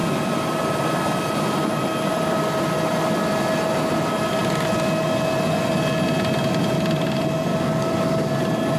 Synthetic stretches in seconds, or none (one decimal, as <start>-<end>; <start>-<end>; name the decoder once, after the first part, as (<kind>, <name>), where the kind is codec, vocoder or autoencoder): 7.5-8.3 (codec, DAC)